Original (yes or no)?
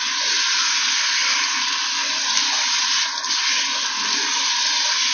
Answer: yes